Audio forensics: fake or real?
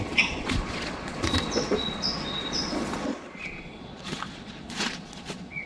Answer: fake